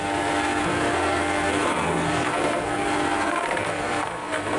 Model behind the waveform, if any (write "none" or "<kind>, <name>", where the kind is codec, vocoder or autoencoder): codec, SNAC